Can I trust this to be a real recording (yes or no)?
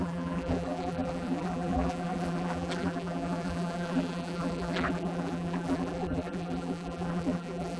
no